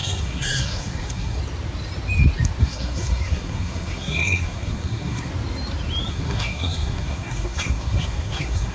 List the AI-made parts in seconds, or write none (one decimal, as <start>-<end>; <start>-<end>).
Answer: 0.0-1.4; 2.6-5.3; 6.1-8.7